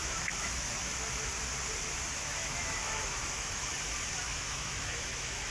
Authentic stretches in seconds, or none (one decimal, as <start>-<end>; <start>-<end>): 1.3-2.1; 3.7-4.2